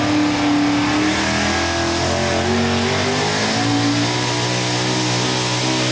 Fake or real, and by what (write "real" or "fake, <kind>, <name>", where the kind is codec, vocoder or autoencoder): real